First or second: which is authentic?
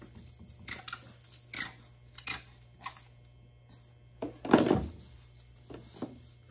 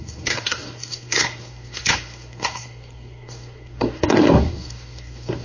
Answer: first